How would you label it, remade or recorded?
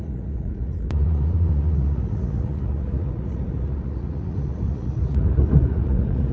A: remade